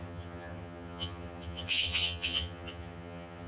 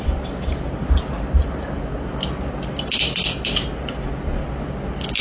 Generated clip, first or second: first